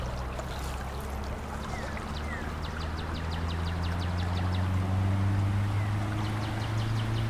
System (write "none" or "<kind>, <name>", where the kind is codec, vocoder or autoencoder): none